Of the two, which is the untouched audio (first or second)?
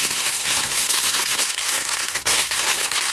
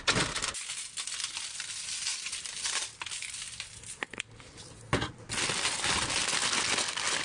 second